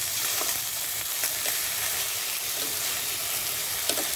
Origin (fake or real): fake